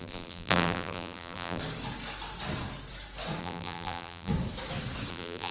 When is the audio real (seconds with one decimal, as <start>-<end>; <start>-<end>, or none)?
1.6-3.4; 4.3-5.1